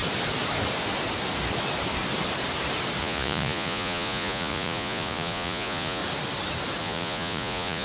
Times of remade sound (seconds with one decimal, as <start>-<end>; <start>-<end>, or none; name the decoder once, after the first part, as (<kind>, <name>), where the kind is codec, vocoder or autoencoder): 3.0-6.0 (vocoder, Vocos); 6.8-7.8